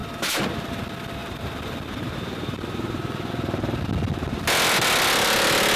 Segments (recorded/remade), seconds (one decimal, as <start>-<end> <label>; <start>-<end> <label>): 0.0-0.7 remade; 0.7-1.2 recorded; 1.2-3.9 remade; 3.9-5.8 recorded